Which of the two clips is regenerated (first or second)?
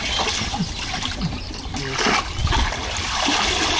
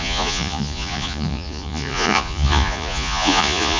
second